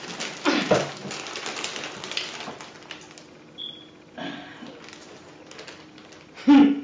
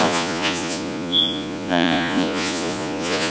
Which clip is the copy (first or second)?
second